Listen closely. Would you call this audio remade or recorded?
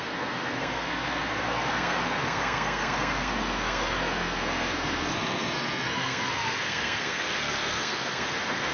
remade